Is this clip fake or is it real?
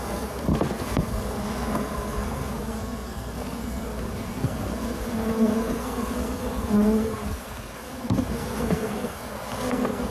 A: fake